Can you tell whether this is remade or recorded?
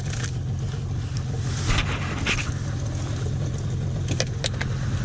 recorded